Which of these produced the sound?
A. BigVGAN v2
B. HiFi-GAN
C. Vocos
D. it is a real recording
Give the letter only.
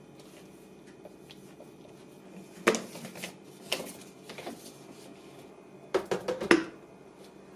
D